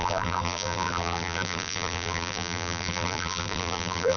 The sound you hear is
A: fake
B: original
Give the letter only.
A